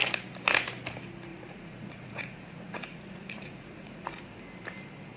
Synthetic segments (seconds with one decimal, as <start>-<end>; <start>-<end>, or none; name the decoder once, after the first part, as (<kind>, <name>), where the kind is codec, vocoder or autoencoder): 1.3-4.2 (vocoder, Vocos)